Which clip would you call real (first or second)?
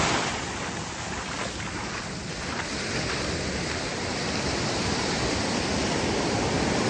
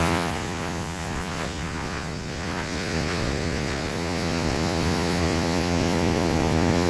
first